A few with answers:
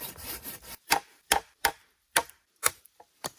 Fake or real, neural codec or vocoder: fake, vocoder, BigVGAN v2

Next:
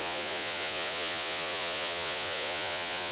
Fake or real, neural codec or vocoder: fake, vocoder, Vocos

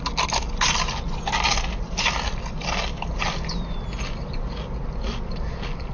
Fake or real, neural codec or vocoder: real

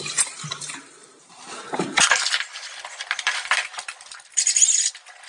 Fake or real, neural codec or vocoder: fake, vocoder, BigVGAN v2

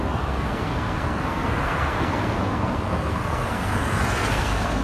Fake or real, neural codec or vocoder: fake, codec, SNAC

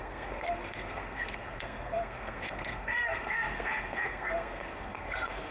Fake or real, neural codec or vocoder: fake, codec, SNAC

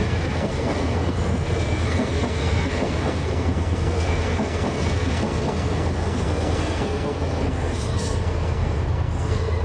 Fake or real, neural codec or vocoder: fake, codec, SNAC